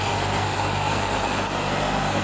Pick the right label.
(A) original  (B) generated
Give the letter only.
B